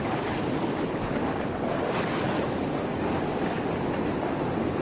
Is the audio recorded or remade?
recorded